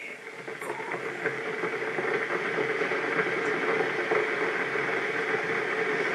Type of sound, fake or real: real